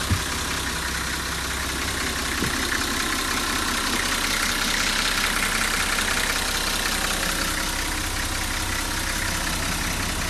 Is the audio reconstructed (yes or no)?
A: no